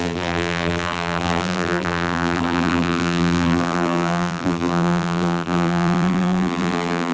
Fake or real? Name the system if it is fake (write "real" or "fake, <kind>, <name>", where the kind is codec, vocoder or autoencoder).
fake, vocoder, BigVGAN v2